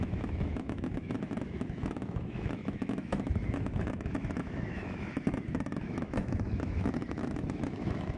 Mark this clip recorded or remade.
remade